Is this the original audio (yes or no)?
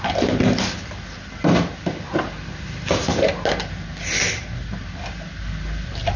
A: yes